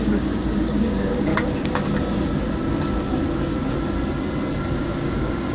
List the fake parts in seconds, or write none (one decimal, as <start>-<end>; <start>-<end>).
0.0-1.3; 4.6-5.5